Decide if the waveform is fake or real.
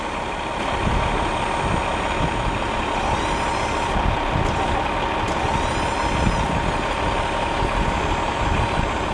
real